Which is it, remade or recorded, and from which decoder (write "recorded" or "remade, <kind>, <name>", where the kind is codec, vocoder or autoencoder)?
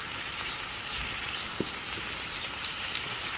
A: remade, vocoder, BigVGAN v2